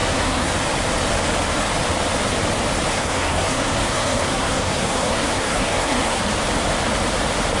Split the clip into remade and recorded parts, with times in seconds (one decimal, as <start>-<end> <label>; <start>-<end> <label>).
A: 0.0-0.5 remade; 0.5-2.9 recorded; 2.9-6.2 remade; 6.2-7.6 recorded